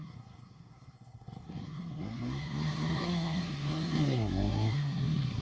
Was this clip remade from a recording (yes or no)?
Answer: yes